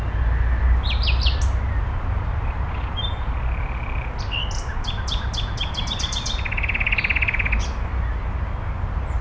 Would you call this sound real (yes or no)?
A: yes